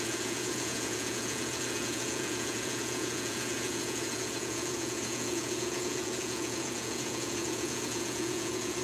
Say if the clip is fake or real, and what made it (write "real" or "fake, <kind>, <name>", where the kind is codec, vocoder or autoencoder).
fake, vocoder, Vocos